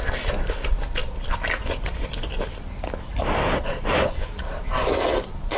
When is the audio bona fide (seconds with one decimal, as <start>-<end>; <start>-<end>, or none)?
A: none